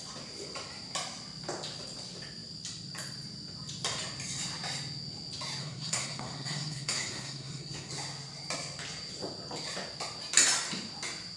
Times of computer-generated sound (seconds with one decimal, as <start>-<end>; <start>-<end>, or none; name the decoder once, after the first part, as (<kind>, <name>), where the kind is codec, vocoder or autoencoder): 5.6-7.9 (codec, SNAC)